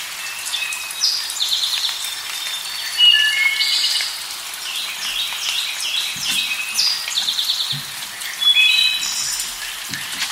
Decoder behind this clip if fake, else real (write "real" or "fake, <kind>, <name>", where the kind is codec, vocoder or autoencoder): real